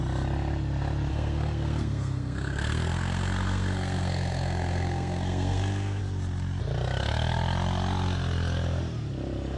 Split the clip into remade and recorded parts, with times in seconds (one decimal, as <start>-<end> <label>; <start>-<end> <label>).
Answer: 0.0-1.1 recorded; 1.1-6.0 remade; 6.0-9.6 recorded